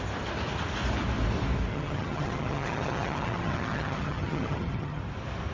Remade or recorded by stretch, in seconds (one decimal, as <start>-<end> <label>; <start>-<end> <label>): 0.0-1.7 recorded; 1.7-5.0 remade; 5.0-5.5 recorded